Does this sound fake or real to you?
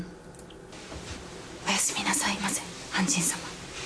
real